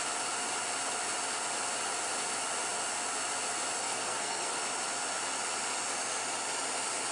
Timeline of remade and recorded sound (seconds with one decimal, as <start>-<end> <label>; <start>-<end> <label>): 0.0-3.8 recorded; 3.8-4.6 remade; 4.6-7.1 recorded